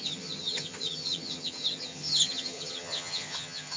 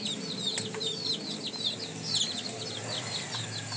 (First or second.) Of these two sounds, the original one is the second